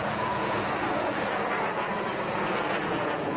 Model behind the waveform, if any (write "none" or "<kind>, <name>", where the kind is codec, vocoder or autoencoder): vocoder, Vocos